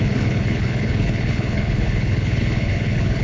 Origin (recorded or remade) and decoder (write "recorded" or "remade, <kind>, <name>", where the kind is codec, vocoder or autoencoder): remade, codec, HILCodec